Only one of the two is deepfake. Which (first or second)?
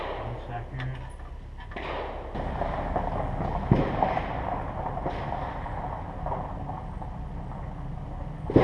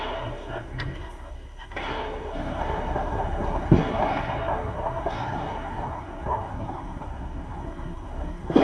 second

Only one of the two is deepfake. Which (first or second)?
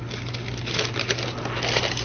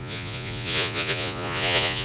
second